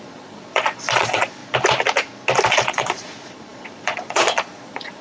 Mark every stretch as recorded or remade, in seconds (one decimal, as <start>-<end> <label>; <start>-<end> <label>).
0.0-1.4 remade; 1.4-2.5 recorded; 2.5-5.0 remade